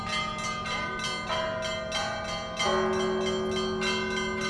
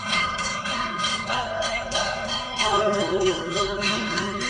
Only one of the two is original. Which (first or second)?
first